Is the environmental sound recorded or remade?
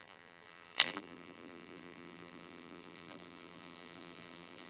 remade